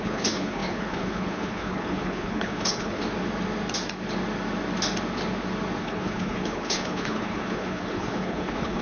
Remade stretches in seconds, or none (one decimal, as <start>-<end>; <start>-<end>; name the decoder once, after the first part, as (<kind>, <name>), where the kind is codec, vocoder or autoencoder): 0.0-3.0 (codec, HILCodec); 5.8-8.8